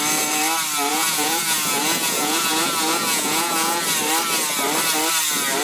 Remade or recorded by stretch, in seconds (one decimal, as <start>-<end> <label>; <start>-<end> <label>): 0.0-0.9 recorded; 0.9-3.8 remade; 3.8-5.6 recorded